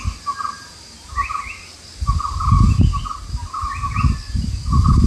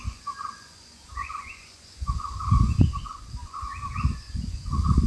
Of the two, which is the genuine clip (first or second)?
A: first